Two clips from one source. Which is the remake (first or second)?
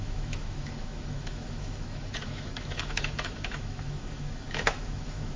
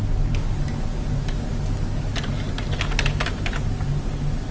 first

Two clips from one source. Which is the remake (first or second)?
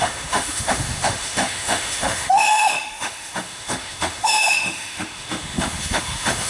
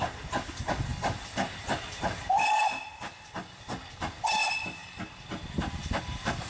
first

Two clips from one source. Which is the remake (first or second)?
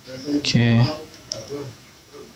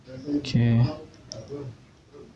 first